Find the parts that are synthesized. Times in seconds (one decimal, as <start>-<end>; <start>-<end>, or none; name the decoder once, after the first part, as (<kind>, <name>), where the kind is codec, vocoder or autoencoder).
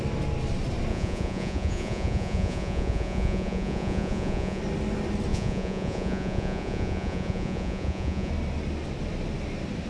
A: 0.9-4.6 (vocoder, Vocos); 5.3-8.3